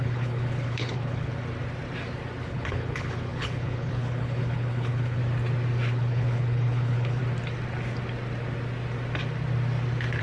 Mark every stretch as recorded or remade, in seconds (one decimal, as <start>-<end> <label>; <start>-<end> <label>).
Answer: 0.0-1.3 remade; 1.3-2.4 recorded; 2.4-5.2 remade; 5.2-5.9 recorded; 5.9-7.2 remade; 7.2-10.2 recorded